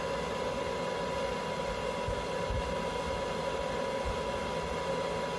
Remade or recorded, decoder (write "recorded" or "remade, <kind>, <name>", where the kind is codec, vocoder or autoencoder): recorded